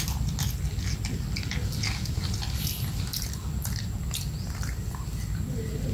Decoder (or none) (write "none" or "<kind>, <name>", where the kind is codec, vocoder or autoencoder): none